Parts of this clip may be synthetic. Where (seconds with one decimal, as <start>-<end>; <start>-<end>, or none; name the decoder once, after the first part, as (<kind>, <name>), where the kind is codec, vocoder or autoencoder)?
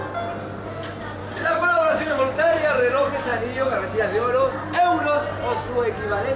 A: 1.2-2.3 (codec, DAC)